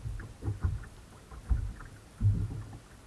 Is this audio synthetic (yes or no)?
no